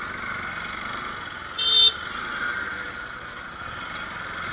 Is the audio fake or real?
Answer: real